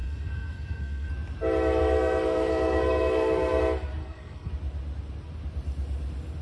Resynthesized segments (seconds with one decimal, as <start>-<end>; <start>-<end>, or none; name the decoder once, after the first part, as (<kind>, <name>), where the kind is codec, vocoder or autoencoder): 0.0-1.1 (codec, SNAC); 1.8-3.6; 4.0-4.5